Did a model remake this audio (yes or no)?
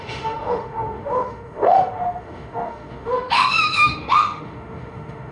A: yes